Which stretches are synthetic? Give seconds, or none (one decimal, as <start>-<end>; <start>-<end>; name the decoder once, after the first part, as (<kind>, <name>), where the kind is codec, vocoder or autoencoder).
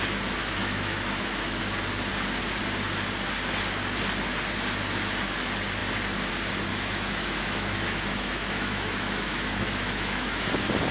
0.4-1.6 (autoencoder, DAC-VAE); 6.7-10.5